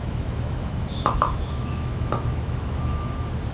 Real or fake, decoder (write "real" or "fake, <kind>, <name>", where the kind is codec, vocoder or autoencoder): fake, autoencoder, DAC-VAE